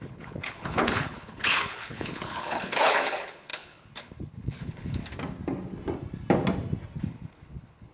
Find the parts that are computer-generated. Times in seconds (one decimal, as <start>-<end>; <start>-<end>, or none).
0.0-5.0; 7.0-7.9